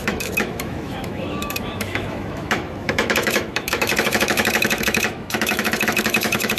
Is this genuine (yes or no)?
no